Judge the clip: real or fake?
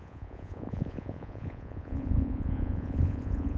fake